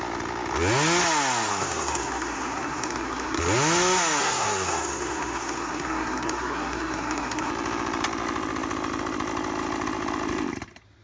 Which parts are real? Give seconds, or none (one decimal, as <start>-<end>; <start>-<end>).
0.0-1.5; 3.4-4.2; 7.5-11.0